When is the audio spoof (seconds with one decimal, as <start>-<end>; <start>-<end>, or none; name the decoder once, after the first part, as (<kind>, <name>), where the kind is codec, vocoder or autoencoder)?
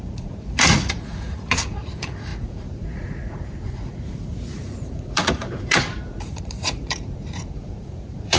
0.0-8.4 (vocoder, Vocos)